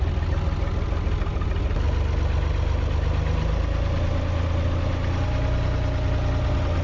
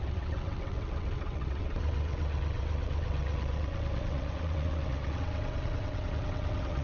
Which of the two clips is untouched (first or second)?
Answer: first